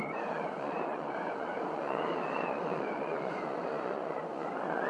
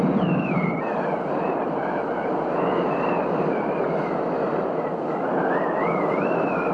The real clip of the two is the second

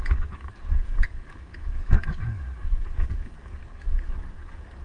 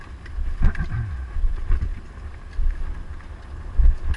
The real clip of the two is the second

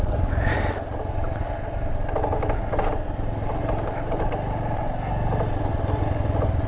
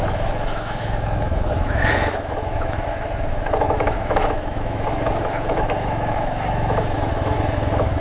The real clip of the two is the first